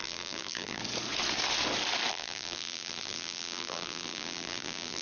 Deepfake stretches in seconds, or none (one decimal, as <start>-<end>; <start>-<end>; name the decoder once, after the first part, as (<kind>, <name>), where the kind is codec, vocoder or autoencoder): 0.0-0.8 (vocoder, BigVGAN v2); 2.1-5.0